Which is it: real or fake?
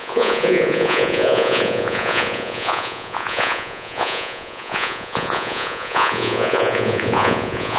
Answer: fake